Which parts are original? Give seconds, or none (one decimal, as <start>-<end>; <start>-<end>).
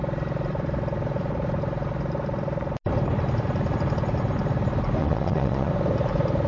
0.0-5.0; 5.7-6.5